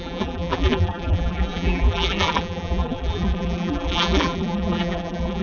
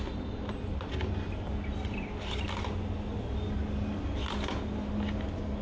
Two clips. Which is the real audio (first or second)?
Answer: second